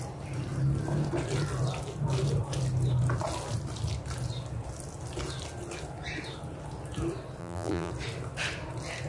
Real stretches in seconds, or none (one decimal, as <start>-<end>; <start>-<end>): 0.0-7.4; 7.9-9.1